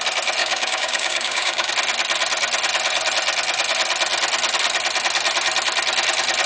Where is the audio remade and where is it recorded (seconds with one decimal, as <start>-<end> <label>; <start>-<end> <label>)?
0.0-0.4 recorded; 0.4-1.7 remade; 1.7-6.5 recorded